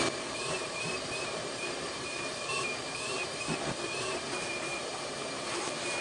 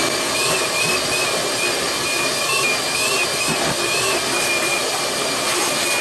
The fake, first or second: first